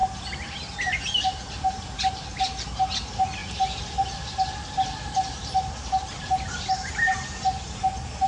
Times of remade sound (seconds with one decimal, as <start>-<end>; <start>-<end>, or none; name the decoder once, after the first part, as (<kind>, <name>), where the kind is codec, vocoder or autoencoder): 3.4-8.3 (vocoder, BigVGAN v2)